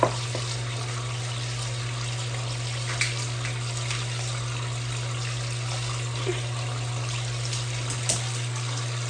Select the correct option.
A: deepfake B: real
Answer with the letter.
B